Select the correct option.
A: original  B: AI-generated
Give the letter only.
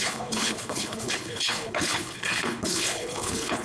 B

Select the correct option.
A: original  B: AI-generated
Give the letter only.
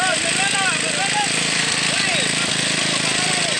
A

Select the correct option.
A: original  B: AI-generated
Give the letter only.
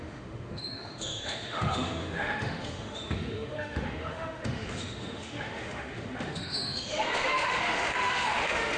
B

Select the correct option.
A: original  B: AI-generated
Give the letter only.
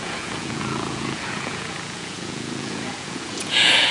B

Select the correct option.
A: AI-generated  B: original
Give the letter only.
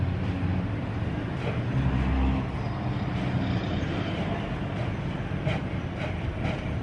B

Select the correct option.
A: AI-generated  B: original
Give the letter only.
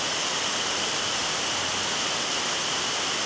B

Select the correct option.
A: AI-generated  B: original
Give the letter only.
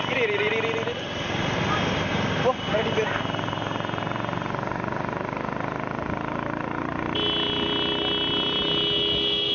B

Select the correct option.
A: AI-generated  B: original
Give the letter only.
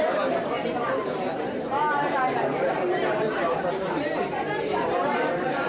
A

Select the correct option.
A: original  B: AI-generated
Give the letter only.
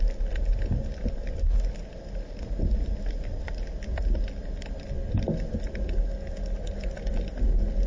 A